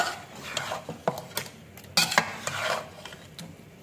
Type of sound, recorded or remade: recorded